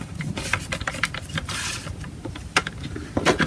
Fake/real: real